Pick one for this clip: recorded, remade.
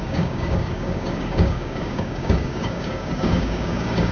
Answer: remade